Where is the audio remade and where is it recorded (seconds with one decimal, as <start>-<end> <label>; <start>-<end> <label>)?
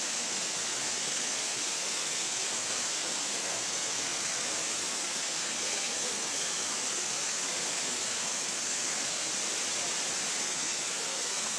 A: 0.0-9.3 remade; 9.3-10.4 recorded; 10.4-11.6 remade